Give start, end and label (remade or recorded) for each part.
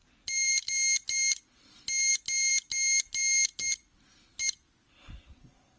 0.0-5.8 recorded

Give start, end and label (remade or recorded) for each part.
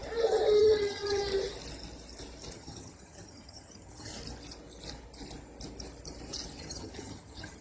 0.0-0.6 recorded; 0.6-1.2 remade; 1.2-2.5 recorded; 2.5-4.1 remade; 4.1-6.6 recorded; 6.6-7.6 remade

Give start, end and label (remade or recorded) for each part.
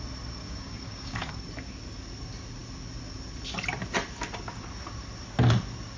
0.0-0.4 recorded; 0.4-1.3 remade; 1.3-6.0 recorded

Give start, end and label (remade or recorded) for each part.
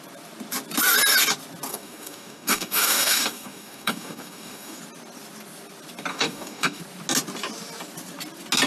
0.0-1.7 recorded; 1.7-4.8 remade; 4.8-6.1 recorded; 6.1-6.8 remade; 6.8-8.7 recorded